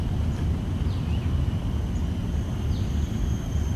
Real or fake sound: real